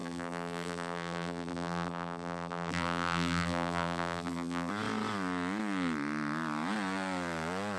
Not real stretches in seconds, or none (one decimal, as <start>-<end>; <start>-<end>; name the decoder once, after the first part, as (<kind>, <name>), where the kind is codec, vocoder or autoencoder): 0.0-4.7 (vocoder, BigVGAN v2)